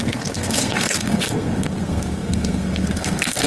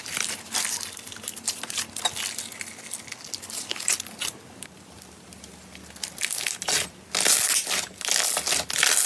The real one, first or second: second